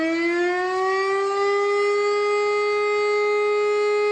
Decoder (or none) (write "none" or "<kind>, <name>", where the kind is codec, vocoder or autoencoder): none